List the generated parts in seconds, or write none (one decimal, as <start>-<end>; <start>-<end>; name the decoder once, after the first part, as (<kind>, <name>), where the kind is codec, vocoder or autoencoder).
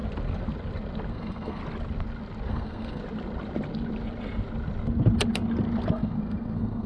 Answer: 1.1-1.6 (codec, SNAC); 2.5-3.0; 5.9-6.9